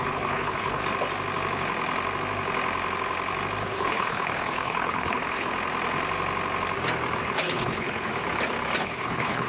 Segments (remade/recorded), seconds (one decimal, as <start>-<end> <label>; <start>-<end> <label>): 0.0-0.8 remade; 0.8-3.6 recorded; 3.6-5.5 remade; 5.5-7.2 recorded; 7.2-8.1 remade; 8.1-8.8 recorded; 8.8-9.5 remade